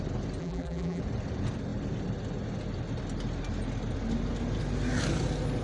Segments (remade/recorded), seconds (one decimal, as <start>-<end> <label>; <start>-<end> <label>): 0.0-0.4 recorded; 0.4-1.0 remade; 1.0-5.6 recorded